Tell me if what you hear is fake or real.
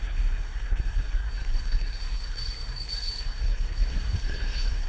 fake